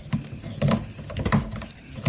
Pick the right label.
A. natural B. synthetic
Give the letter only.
A